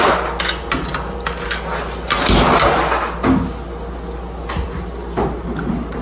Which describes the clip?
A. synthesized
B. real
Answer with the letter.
B